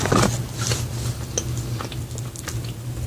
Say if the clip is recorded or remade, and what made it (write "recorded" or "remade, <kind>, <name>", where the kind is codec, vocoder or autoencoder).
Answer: recorded